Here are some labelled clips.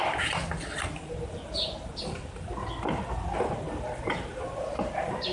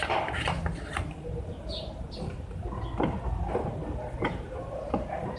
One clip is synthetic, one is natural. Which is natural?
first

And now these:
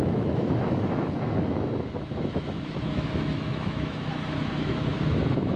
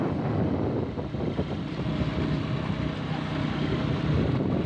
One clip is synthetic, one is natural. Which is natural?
second